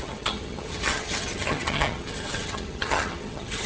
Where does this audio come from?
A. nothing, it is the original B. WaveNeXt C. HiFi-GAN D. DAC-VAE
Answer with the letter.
C